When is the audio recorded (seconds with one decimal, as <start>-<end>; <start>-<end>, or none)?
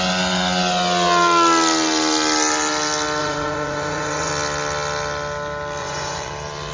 0.0-3.2; 4.3-5.8; 6.3-6.7